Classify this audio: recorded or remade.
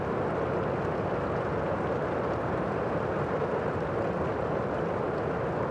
recorded